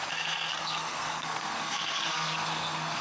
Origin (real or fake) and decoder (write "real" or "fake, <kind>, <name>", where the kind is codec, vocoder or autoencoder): fake, codec, SNAC